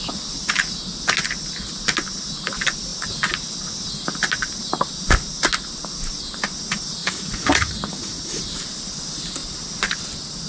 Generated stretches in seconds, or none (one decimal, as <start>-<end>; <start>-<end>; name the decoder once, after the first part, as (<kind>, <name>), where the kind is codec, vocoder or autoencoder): 7.0-8.4 (vocoder, Vocos)